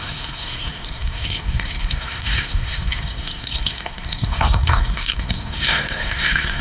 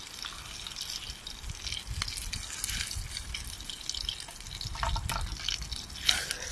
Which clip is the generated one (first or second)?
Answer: first